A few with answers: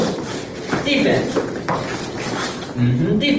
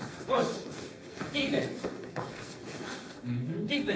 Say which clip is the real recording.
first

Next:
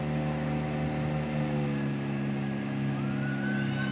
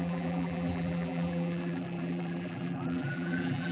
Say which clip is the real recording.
first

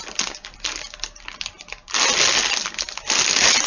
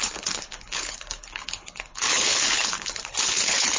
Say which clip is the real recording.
first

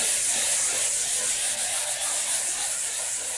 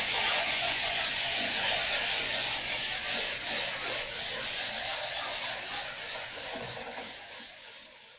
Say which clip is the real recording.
first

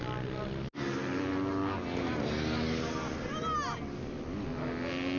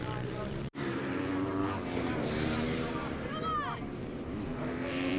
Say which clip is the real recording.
first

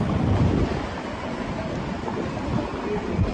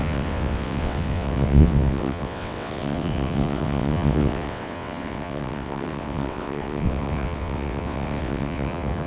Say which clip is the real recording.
first